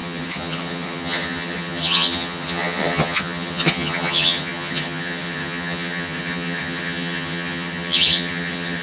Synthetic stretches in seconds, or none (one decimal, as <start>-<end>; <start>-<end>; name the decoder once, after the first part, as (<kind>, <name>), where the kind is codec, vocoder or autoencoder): 0.0-8.8 (vocoder, HiFi-GAN)